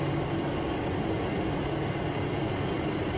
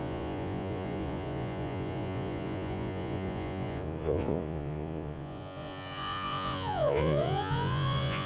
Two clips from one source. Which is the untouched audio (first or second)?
first